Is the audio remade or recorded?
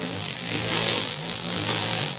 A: remade